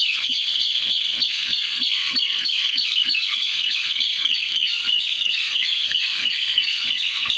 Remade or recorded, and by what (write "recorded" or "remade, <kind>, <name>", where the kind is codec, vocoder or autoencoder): remade, codec, SNAC